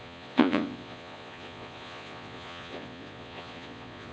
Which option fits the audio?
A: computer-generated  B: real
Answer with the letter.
A